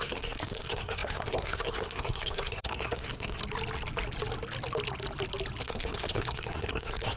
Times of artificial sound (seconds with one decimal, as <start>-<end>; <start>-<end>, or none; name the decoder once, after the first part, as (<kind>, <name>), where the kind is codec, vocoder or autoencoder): 0.0-3.4 (codec, SNAC); 5.6-7.2